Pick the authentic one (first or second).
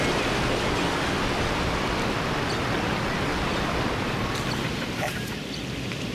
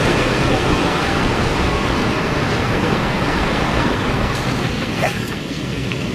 first